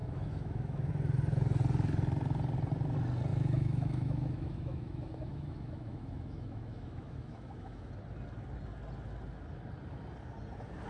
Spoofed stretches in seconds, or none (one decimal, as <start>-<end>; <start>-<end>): 0.0-0.9; 3.3-7.9